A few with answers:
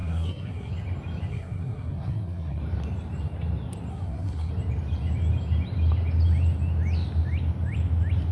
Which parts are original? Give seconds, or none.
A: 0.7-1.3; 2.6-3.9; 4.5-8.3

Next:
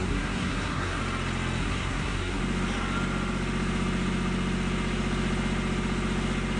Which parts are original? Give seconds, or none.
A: 1.0-1.6; 2.4-6.6

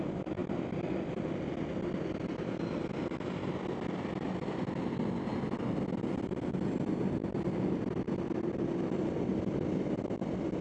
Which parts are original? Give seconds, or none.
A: 0.0-10.6

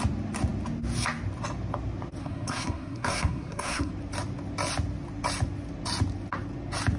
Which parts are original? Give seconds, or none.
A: 0.0-2.2; 3.9-7.0

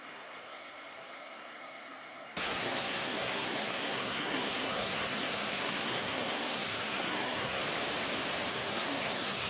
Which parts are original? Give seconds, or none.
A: 7.6-8.5

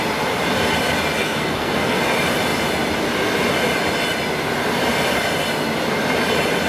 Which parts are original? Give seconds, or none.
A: 0.0-1.2; 2.0-6.7

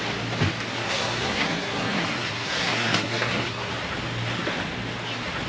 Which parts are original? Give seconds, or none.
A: 0.0-0.7; 3.7-5.5